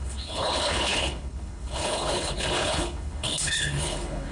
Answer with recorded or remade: remade